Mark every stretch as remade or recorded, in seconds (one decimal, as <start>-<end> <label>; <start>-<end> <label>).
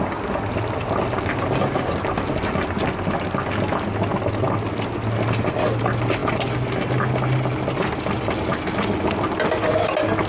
0.0-10.3 recorded